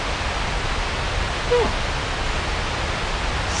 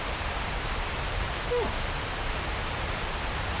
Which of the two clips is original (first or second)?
first